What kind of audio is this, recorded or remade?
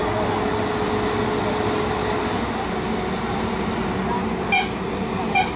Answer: recorded